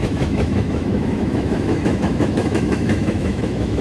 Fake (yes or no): yes